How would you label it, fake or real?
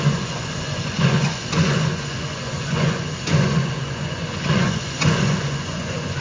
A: fake